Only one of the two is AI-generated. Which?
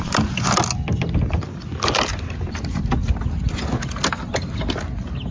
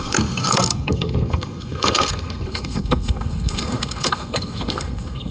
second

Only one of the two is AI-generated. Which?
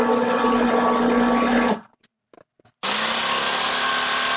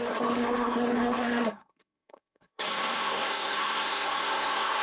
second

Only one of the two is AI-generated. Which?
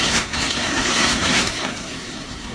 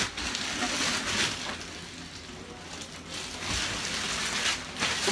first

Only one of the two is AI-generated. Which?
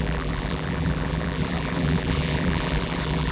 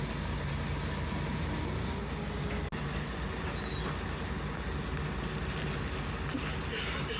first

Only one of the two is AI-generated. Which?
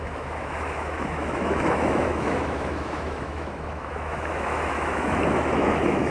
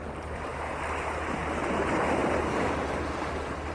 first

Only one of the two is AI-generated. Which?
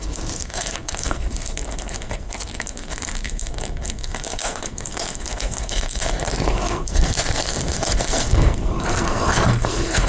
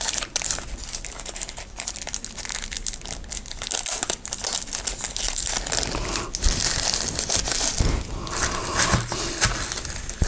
first